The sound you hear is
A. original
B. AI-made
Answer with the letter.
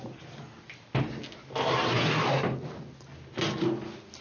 A